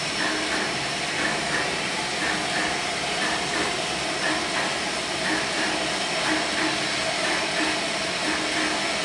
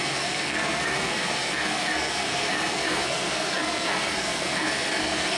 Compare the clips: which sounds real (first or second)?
first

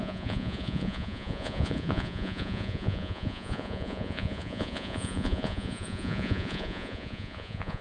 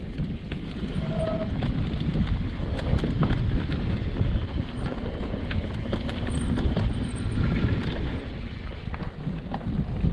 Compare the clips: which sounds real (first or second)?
second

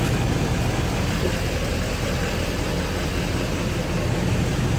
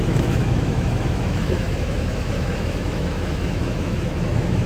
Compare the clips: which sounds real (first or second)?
first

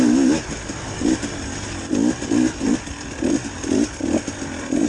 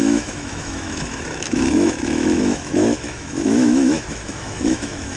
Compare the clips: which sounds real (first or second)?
first